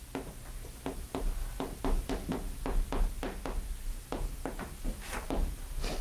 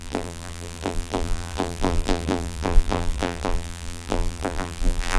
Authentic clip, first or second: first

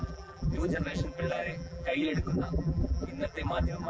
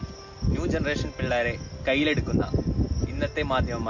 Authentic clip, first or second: second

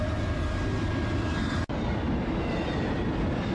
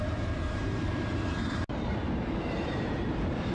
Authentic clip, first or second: first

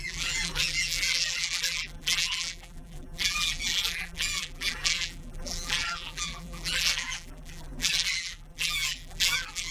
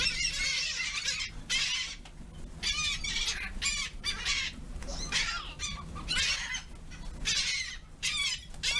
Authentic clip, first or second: second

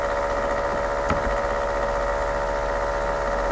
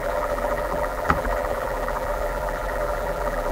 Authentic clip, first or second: first